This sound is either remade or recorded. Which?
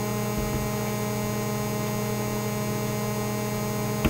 recorded